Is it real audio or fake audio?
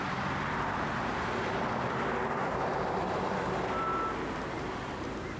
real